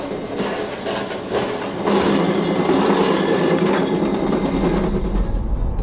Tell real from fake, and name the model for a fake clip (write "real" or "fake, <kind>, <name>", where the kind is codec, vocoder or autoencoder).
real